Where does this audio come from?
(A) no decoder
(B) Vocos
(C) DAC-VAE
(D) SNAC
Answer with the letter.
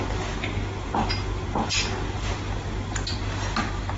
A